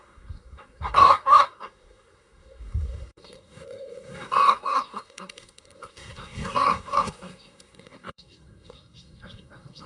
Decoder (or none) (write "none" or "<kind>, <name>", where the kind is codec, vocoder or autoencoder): codec, SNAC